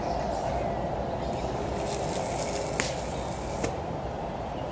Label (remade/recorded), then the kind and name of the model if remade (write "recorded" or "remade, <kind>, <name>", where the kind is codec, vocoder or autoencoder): remade, vocoder, BigVGAN v2